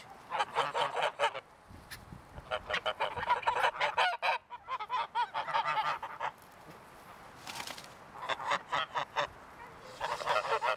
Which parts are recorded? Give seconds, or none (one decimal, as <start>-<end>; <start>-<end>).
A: 0.0-10.8